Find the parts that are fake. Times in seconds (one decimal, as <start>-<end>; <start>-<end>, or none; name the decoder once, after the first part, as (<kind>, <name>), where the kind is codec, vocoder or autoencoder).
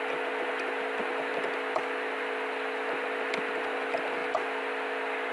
none